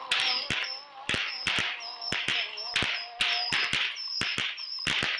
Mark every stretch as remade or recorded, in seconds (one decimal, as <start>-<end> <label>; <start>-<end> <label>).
0.0-5.2 recorded